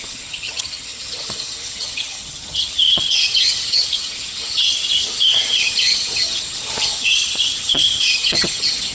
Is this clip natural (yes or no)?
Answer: no